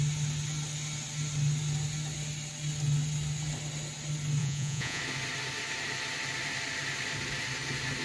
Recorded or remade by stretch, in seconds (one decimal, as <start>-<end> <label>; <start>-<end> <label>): 0.0-4.4 recorded; 4.4-5.0 remade; 5.0-8.0 recorded